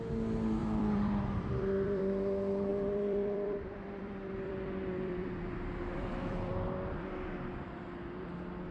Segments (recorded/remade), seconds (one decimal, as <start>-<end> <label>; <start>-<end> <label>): 0.0-0.6 recorded; 0.6-2.0 remade; 2.0-2.7 recorded; 2.7-6.5 remade; 6.5-8.7 recorded